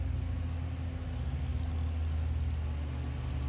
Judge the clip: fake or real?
real